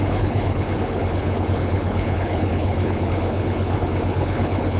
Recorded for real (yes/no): no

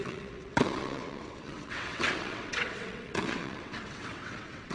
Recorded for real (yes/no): no